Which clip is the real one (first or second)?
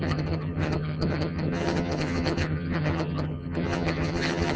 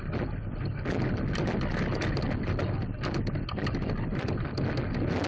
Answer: second